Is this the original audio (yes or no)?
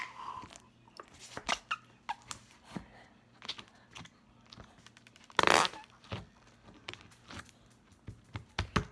yes